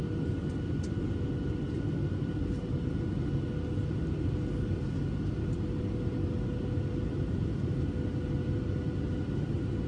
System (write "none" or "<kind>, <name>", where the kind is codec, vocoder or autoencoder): none